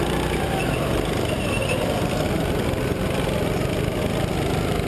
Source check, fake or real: real